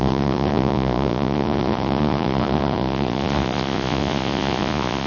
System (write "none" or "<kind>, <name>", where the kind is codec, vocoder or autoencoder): vocoder, Vocos